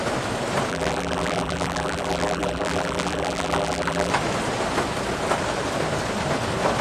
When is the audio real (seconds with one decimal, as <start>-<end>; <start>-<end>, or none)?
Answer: 0.0-0.7; 4.1-6.8

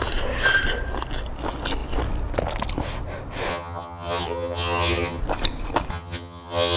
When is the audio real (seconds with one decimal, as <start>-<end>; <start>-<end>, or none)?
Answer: 0.0-3.5; 5.2-5.9

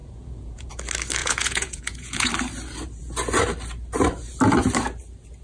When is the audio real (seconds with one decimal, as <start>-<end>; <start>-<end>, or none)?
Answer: 0.7-1.2; 2.3-5.4

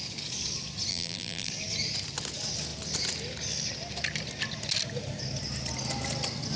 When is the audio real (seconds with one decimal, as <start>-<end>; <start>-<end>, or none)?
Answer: 0.0-0.9; 1.5-6.6

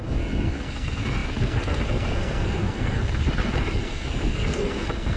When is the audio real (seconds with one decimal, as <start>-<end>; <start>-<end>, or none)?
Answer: none

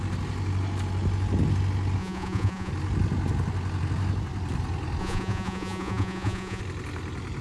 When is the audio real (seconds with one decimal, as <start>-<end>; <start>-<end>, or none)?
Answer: 0.0-2.0; 2.7-5.0; 6.6-7.4

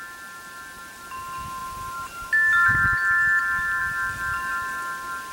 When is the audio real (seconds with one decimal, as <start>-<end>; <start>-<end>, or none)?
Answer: 0.0-5.3